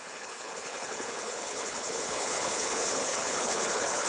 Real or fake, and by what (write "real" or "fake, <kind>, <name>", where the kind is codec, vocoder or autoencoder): fake, codec, HILCodec